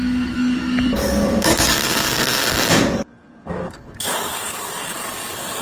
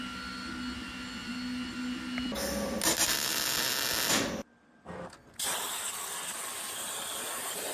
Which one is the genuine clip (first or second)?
second